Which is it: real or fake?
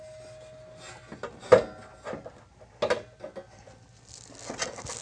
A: real